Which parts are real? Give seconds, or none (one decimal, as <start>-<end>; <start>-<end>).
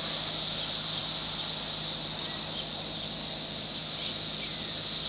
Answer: 0.0-5.1